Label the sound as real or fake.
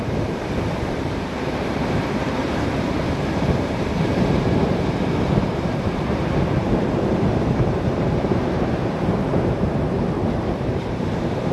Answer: fake